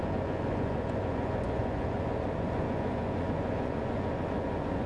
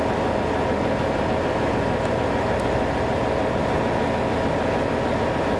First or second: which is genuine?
second